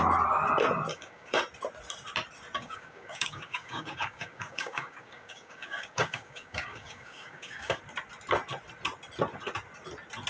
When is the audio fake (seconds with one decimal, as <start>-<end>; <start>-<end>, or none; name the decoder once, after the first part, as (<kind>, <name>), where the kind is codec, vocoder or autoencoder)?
0.9-1.4 (codec, DAC); 2.6-7.8